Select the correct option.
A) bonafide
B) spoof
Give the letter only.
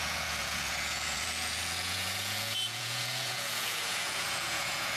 B